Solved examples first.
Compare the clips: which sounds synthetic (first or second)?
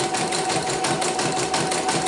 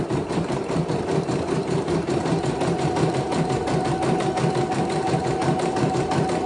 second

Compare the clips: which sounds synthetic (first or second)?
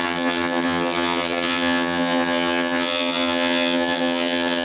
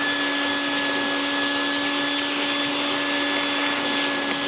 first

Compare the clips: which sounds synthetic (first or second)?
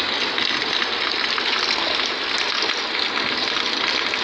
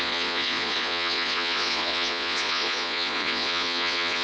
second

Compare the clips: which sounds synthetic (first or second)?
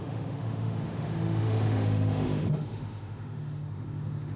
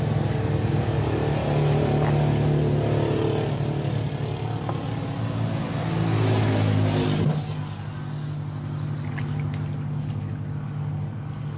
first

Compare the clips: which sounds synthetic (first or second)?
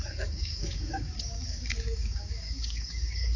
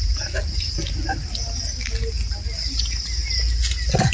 first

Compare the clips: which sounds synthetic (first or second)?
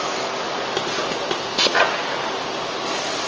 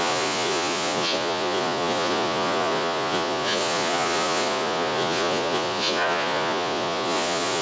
second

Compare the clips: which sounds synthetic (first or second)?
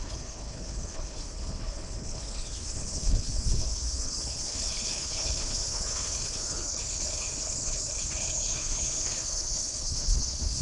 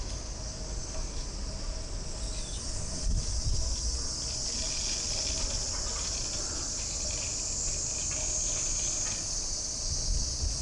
first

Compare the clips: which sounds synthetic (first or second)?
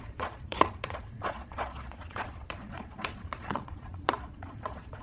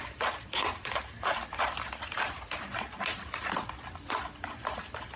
first